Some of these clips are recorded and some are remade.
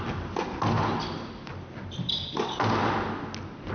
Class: recorded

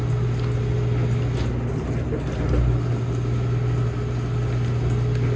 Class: recorded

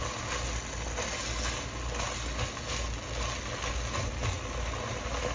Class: recorded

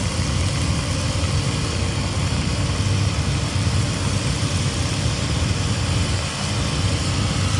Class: recorded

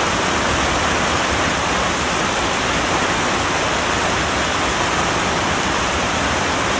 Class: recorded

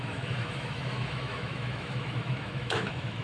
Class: remade